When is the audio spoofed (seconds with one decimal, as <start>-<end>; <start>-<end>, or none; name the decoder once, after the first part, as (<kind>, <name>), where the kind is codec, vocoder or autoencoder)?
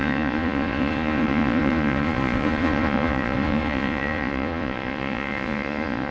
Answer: 0.0-6.1 (vocoder, Vocos)